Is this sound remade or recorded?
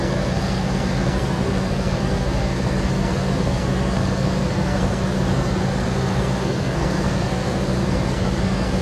remade